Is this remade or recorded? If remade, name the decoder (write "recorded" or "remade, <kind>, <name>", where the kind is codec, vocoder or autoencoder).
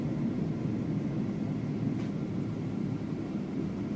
recorded